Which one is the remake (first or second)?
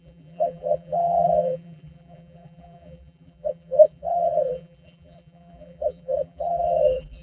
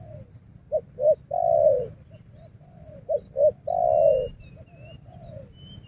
first